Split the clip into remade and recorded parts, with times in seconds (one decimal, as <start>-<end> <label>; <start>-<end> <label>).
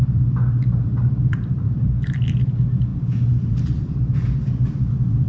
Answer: 0.0-2.9 remade; 2.9-3.5 recorded; 3.5-5.3 remade